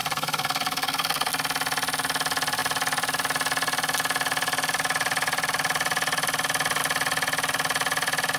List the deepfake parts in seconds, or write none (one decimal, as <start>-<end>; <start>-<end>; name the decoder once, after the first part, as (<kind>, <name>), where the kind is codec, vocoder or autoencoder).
0.0-1.3 (codec, SNAC)